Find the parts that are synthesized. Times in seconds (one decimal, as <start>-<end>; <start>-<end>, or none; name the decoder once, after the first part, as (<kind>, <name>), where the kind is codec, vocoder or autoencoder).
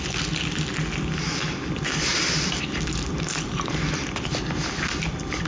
2.1-5.5 (vocoder, BigVGAN v2)